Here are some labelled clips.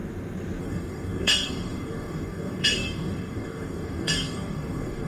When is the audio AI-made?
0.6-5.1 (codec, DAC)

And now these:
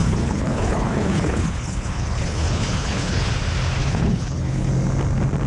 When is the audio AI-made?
0.0-3.3 (codec, HILCodec); 3.8-4.7

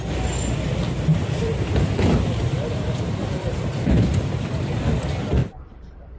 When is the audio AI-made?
1.1-4.8 (vocoder, BigVGAN v2); 5.4-6.2

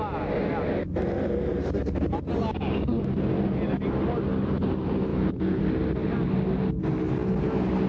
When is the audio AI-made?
5.1-5.6 (vocoder, Vocos)

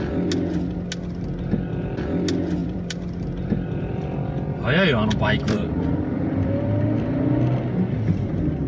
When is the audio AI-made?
2.6-3.9 (vocoder, BigVGAN v2); 5.1-6.8

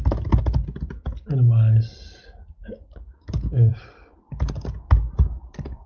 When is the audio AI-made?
2.6-3.7 (codec, DAC)

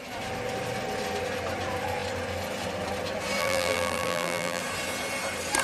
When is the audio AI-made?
3.4-4.6 (vocoder, BigVGAN v2)